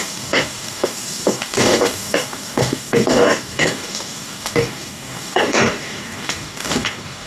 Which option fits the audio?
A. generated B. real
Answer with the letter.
A